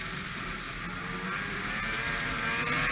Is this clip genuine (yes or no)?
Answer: yes